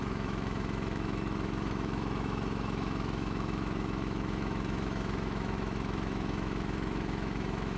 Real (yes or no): no